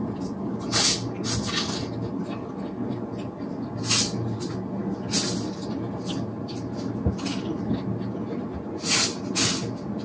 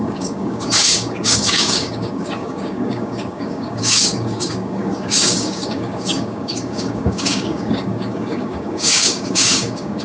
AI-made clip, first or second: second